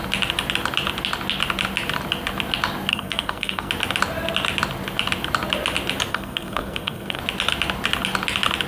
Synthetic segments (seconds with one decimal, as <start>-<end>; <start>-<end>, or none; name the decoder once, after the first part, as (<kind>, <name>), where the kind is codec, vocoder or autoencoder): 2.9-3.7 (codec, SNAC); 6.1-7.2